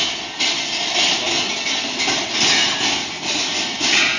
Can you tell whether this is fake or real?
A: real